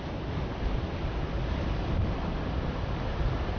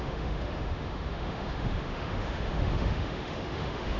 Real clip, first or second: first